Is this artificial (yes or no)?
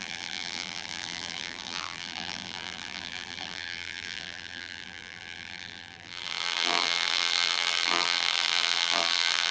yes